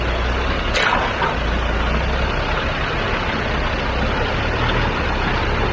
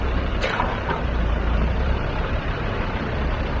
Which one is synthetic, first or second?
second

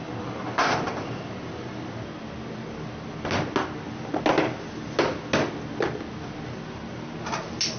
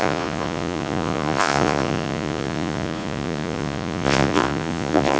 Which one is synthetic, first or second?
second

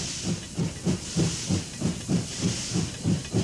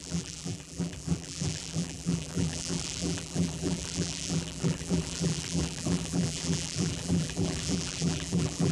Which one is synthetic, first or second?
second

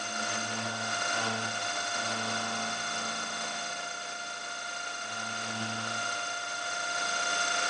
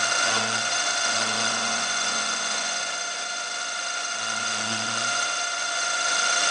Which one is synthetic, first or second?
second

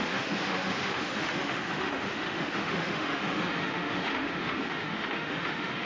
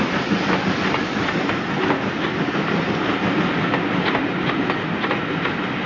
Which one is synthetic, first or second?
first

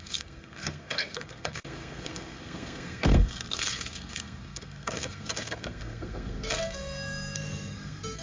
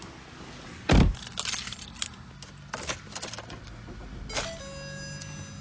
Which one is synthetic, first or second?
first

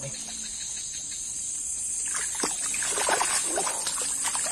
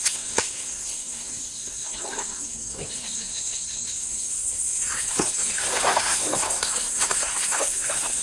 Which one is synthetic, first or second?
second